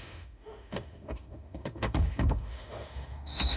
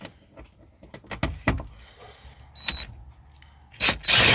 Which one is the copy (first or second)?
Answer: first